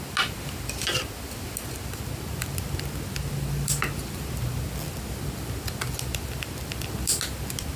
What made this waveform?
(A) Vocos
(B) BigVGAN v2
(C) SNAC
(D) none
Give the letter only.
D